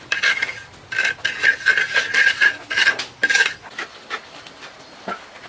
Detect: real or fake real